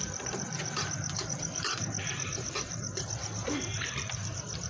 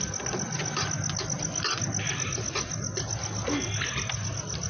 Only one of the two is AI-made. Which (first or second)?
first